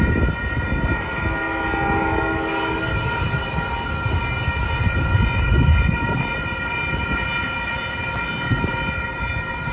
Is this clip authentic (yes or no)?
yes